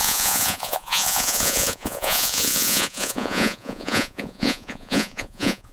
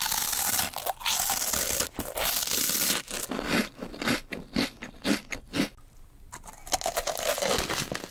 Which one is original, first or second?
second